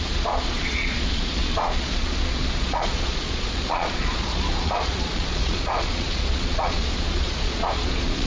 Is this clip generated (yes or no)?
yes